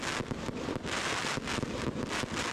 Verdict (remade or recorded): recorded